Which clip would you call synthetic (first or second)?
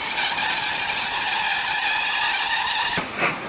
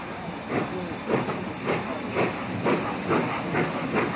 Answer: first